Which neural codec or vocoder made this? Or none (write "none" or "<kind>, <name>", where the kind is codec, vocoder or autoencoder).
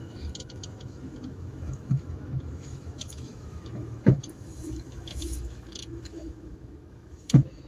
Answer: autoencoder, DAC-VAE